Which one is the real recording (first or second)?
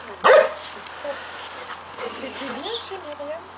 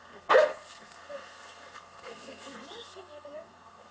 first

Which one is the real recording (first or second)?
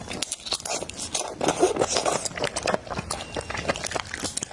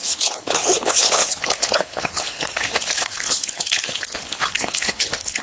first